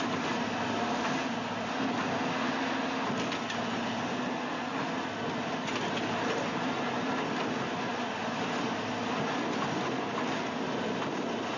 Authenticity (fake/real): real